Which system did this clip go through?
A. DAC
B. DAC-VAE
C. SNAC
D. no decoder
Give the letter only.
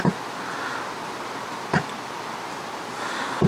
D